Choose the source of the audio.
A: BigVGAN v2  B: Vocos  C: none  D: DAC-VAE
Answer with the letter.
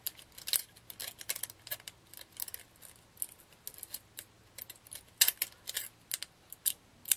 C